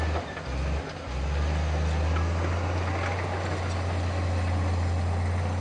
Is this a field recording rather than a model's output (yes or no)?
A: yes